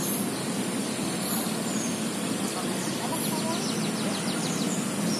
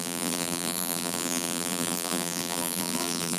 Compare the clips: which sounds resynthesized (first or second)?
second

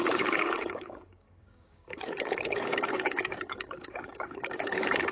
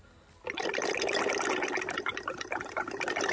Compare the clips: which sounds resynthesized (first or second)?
first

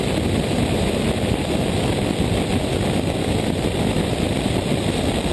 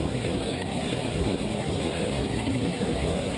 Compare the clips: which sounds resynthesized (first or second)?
second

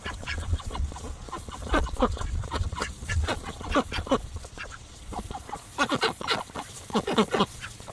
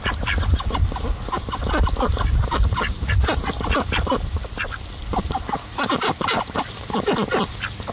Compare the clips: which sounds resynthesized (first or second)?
first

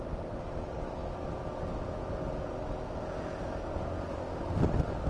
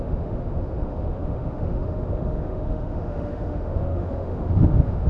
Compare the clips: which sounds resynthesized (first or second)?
second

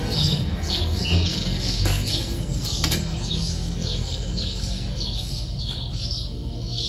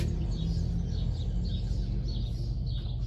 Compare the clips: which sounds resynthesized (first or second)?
first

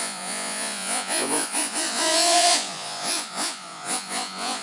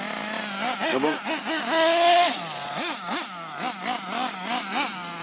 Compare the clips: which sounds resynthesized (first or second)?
first